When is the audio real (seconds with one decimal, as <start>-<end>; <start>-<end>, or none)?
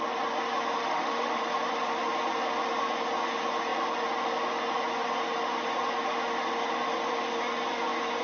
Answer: 0.0-0.8; 1.4-8.2